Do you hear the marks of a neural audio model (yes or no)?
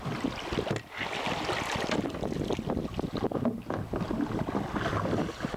no